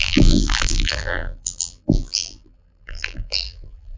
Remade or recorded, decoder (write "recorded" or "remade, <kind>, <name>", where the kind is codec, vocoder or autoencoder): remade, vocoder, BigVGAN v2